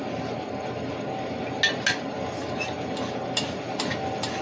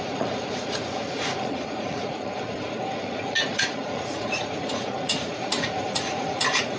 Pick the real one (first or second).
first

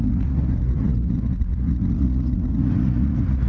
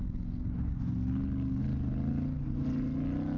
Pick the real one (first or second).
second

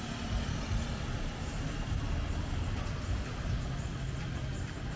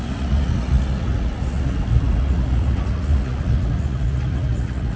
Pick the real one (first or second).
first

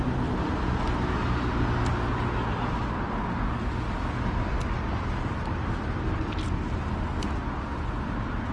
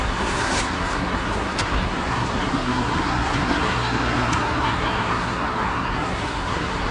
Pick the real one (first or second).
first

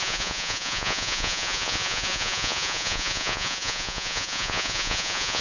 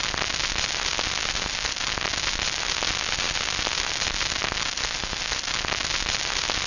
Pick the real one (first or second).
second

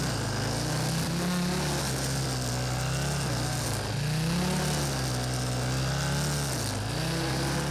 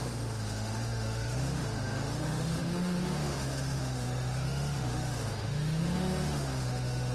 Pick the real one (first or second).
first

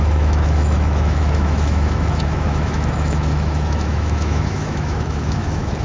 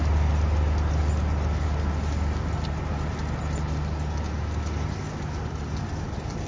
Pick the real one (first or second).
second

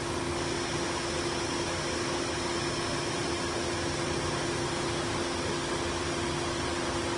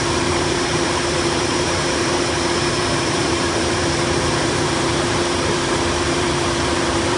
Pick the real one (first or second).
first